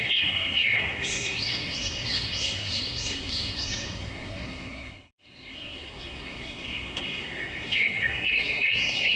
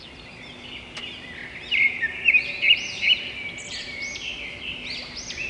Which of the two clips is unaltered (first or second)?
second